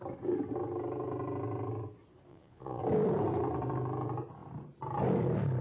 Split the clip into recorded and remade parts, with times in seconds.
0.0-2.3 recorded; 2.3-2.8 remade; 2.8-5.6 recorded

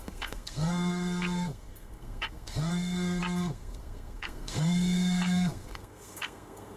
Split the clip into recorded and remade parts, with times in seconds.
0.0-6.8 remade

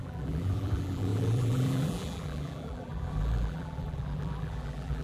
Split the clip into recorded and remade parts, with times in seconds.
0.0-5.0 remade

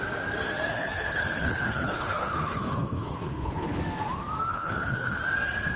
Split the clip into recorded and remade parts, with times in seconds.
0.0-0.7 recorded; 0.7-3.8 remade; 3.8-4.5 recorded; 4.5-5.2 remade; 5.2-5.8 recorded

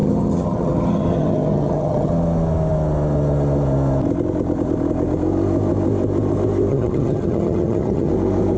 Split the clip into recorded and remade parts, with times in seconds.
0.0-2.1 remade; 2.1-6.7 recorded; 6.7-8.1 remade; 8.1-8.6 recorded

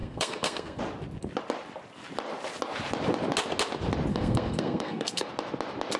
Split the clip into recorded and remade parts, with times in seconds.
0.0-0.8 remade; 0.8-4.1 recorded; 4.1-5.3 remade; 5.3-6.0 recorded